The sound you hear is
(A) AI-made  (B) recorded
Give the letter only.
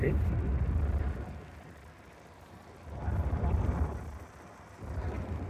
B